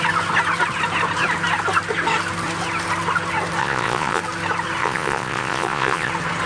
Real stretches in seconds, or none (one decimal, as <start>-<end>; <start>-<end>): 0.0-3.6; 4.2-4.8; 6.1-6.5